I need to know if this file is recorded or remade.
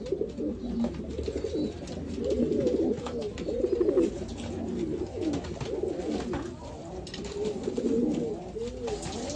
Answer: recorded